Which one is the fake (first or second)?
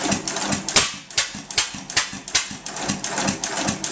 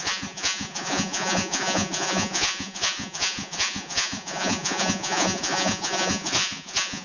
second